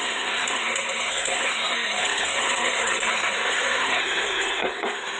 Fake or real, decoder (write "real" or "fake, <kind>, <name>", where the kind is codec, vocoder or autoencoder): fake, codec, SNAC